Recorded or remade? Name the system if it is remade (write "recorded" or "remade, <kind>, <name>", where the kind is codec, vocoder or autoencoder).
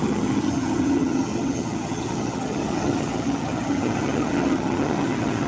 remade, vocoder, HiFi-GAN